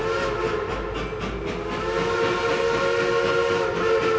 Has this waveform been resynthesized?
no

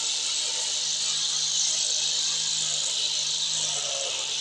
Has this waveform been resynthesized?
no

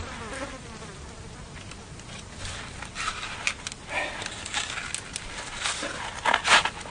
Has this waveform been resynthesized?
no